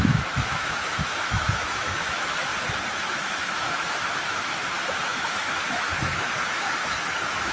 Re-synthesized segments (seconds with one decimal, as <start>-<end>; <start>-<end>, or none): 0.0-2.5; 3.1-7.5